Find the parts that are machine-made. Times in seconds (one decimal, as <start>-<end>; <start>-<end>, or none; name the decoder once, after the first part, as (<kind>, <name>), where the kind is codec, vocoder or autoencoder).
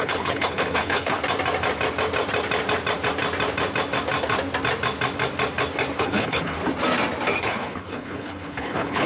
0.0-1.2 (codec, HILCodec); 6.0-6.6; 7.4-9.1